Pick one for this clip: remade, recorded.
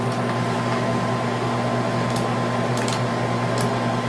recorded